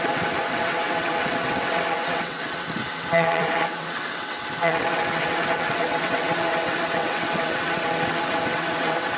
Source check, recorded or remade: remade